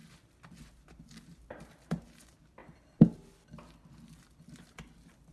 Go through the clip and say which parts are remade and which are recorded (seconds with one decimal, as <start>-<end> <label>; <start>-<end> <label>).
0.0-2.2 recorded; 2.2-2.6 remade; 2.6-5.3 recorded